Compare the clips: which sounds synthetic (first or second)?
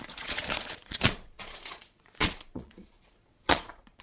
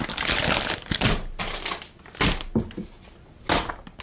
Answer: first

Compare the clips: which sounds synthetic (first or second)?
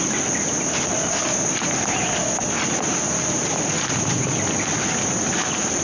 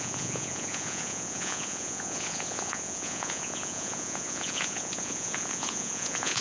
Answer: second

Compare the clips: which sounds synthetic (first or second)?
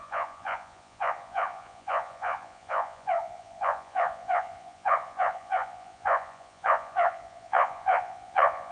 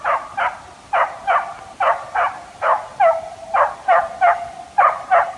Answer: first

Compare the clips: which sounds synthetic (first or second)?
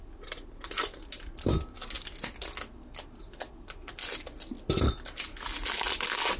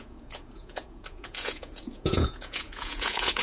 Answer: second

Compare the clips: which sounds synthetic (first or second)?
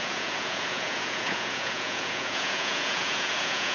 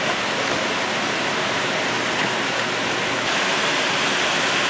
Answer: first